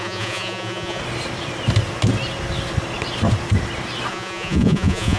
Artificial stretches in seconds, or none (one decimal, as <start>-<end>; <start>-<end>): 0.0-1.0; 4.1-5.2